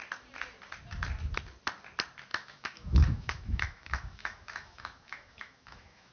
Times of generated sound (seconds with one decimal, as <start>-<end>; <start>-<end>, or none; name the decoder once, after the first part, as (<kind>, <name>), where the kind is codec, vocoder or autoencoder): 2.3-6.1 (autoencoder, DAC-VAE)